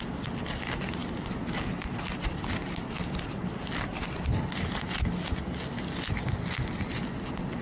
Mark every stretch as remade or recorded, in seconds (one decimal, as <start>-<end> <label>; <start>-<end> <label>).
0.0-7.6 recorded